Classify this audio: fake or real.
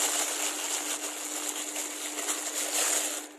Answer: real